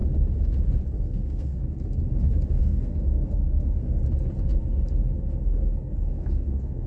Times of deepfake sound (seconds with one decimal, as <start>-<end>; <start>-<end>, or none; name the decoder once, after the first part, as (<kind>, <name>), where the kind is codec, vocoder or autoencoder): 1.0-1.6 (codec, SNAC); 2.6-4.0; 6.2-6.9